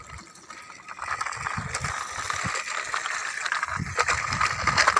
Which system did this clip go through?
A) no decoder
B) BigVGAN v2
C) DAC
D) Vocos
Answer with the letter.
A